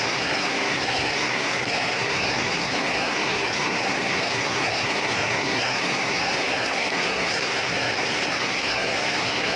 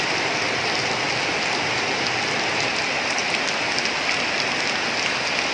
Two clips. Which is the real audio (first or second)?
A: second